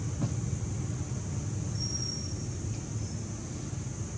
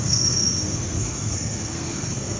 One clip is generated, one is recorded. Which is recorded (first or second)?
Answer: first